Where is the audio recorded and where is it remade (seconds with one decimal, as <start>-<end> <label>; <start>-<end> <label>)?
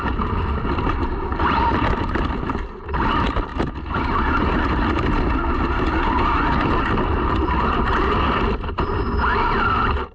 0.0-3.5 remade; 3.5-7.2 recorded; 7.2-10.1 remade